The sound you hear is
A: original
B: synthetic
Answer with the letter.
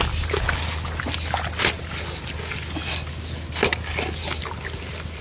A